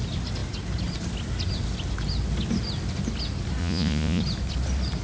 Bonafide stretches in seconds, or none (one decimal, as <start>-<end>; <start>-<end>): 0.0-3.6; 4.2-5.0